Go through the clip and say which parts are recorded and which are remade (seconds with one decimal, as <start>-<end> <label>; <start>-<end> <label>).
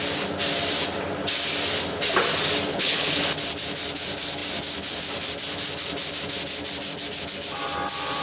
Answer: 0.0-2.7 recorded; 2.7-3.2 remade; 3.2-8.2 recorded